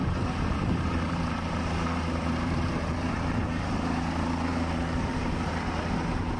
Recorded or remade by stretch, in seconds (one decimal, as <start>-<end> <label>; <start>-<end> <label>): 0.0-3.7 remade; 3.7-4.5 recorded; 4.5-5.5 remade; 5.5-6.4 recorded